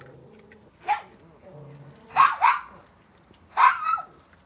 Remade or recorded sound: recorded